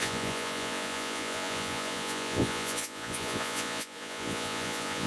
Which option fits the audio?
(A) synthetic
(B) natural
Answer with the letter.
A